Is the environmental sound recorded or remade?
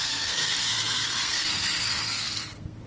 remade